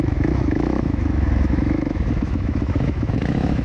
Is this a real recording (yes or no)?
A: no